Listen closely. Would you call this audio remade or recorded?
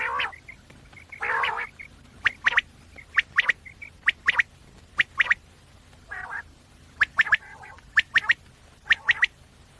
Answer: recorded